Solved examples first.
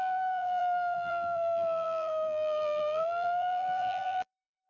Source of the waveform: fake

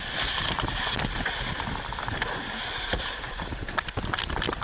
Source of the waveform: real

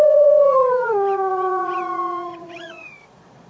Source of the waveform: fake